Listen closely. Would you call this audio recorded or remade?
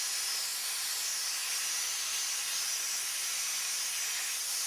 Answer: recorded